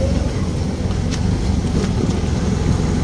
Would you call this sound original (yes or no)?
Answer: yes